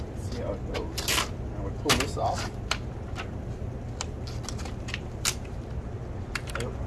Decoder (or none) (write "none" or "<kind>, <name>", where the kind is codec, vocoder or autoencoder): none